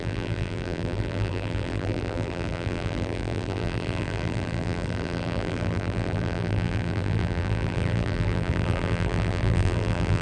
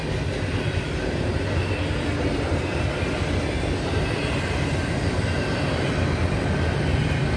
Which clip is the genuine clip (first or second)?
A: second